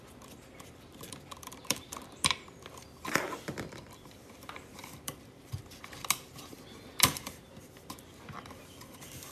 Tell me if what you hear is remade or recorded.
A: remade